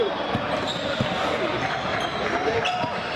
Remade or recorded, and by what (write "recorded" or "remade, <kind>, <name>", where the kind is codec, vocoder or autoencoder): remade, vocoder, BigVGAN v2